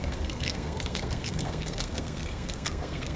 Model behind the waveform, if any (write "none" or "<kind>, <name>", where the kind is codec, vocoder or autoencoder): codec, SNAC